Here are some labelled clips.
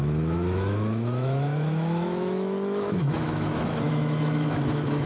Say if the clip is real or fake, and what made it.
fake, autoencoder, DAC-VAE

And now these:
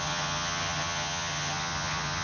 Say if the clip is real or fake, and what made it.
fake, vocoder, HiFi-GAN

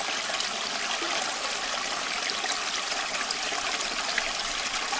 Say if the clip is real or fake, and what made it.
real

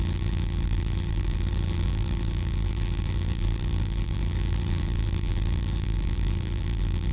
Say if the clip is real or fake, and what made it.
fake, vocoder, BigVGAN v2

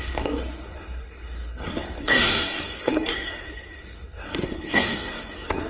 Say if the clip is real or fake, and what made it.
fake, codec, SNAC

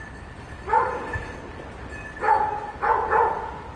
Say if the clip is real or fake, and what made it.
real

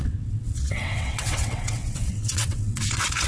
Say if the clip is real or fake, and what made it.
fake, vocoder, WaveNeXt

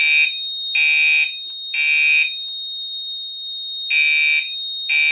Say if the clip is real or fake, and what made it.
real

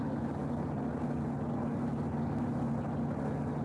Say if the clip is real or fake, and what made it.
real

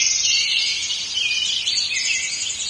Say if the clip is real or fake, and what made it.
real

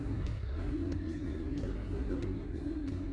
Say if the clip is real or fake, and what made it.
fake, codec, SNAC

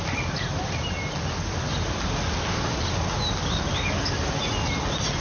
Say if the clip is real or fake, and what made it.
real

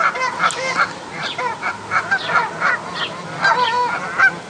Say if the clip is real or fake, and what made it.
real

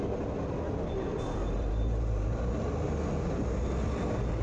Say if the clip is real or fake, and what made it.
real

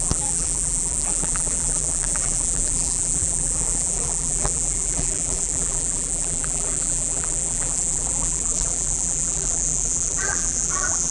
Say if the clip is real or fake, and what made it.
fake, vocoder, BigVGAN v2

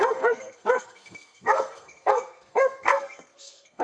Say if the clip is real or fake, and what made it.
fake, codec, SNAC